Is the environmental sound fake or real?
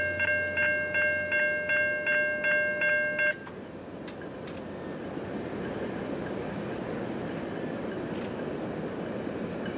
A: real